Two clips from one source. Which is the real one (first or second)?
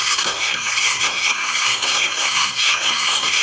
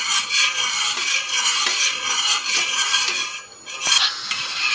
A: second